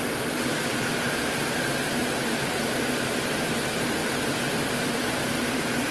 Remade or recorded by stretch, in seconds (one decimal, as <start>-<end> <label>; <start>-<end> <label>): 0.0-0.5 recorded; 0.5-2.8 remade; 2.8-4.0 recorded; 4.0-5.9 remade